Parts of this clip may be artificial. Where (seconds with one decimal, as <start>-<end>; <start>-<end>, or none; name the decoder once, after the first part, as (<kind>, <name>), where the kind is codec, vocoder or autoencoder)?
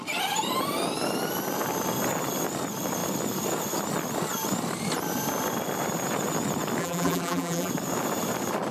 6.8-7.7 (vocoder, BigVGAN v2)